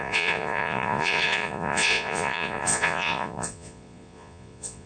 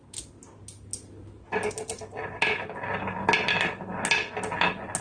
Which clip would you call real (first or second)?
second